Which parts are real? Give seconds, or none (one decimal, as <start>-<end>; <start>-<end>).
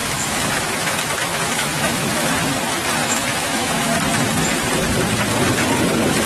2.3-3.0; 3.9-6.3